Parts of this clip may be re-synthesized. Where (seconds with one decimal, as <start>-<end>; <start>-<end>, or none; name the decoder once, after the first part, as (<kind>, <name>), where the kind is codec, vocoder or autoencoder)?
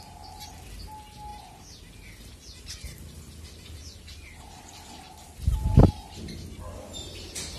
none